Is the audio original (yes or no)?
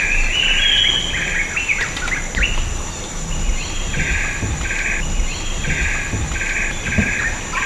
yes